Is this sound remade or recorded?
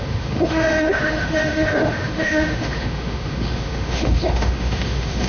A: remade